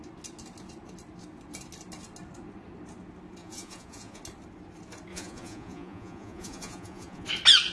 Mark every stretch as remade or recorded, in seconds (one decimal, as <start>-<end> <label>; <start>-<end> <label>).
0.0-3.4 recorded; 3.4-4.2 remade; 4.2-5.1 recorded; 5.1-7.3 remade; 7.3-7.7 recorded